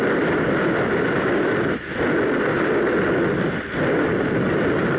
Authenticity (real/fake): real